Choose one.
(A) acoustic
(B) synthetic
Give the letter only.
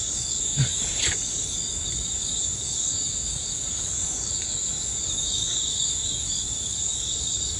B